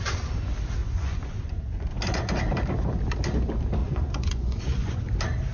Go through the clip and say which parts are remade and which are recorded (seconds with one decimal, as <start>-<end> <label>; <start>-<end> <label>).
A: 0.0-0.8 recorded; 0.8-2.4 remade; 2.4-3.8 recorded; 3.8-5.0 remade; 5.0-5.5 recorded